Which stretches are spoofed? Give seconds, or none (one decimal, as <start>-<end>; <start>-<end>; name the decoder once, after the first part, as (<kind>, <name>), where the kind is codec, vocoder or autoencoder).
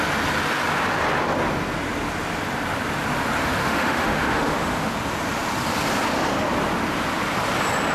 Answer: 3.6-4.9 (autoencoder, DAC-VAE)